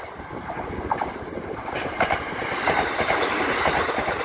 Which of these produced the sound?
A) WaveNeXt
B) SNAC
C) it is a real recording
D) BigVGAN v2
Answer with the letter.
D